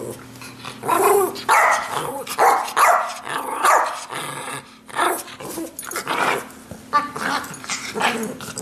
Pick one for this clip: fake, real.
real